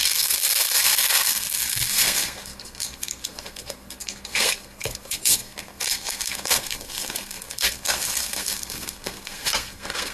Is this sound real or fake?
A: fake